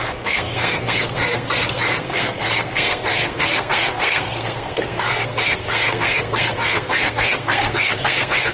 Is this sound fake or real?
fake